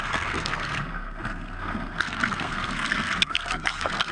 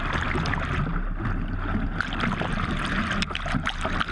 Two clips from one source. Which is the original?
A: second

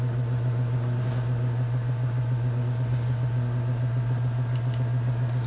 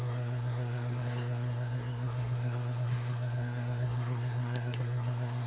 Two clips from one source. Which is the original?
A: first